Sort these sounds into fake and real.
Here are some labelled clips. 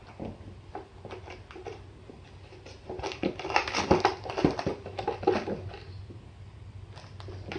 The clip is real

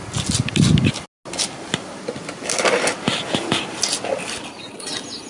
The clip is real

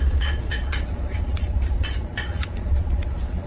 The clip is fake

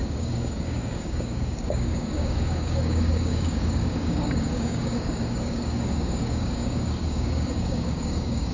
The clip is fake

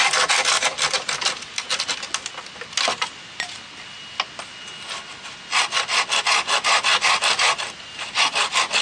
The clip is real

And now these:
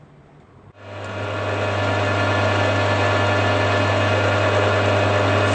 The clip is real